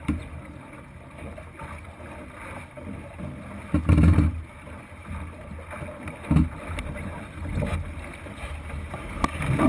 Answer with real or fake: real